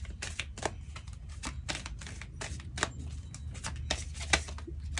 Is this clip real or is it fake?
real